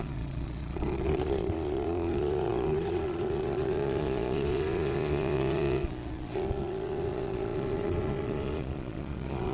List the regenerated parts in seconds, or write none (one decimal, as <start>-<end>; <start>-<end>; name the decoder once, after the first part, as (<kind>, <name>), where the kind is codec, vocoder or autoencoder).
0.0-9.5 (vocoder, Vocos)